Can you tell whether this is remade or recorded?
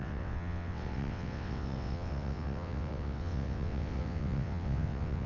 remade